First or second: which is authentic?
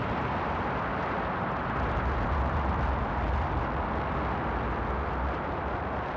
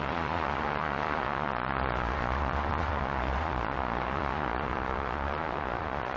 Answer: first